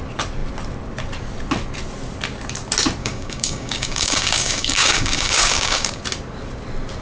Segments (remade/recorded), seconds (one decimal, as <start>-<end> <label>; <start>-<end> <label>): 0.0-3.0 recorded; 3.0-6.0 remade; 6.0-7.0 recorded